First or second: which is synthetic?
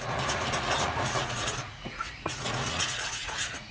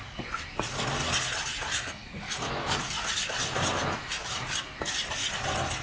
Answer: first